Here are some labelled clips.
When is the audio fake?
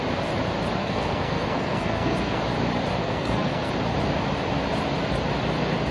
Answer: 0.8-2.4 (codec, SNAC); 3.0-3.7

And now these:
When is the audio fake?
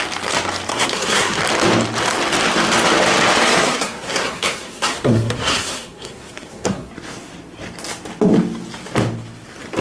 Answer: 0.7-1.4 (codec, SNAC); 3.4-6.9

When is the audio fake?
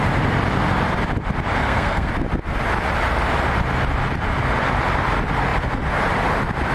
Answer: 1.6-2.1 (codec, SNAC)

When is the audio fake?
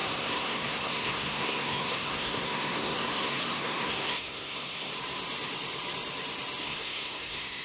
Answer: 0.0-4.9 (codec, SNAC); 6.6-7.6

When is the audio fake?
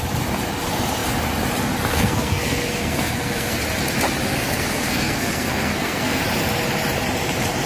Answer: 1.9-3.6 (codec, SNAC); 4.3-6.2